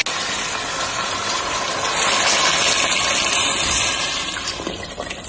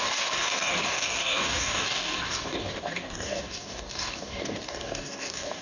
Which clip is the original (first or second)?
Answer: first